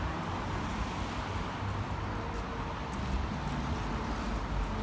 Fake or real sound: real